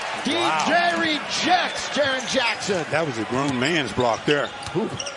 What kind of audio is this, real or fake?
fake